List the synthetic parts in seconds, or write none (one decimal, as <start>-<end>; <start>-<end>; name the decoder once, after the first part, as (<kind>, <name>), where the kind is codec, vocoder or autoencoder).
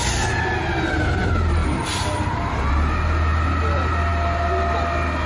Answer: none